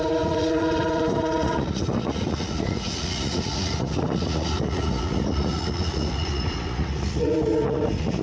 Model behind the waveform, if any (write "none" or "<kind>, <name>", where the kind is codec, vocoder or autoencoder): vocoder, Vocos